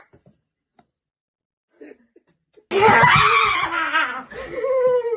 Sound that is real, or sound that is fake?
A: real